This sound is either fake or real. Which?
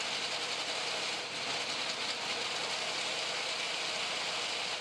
real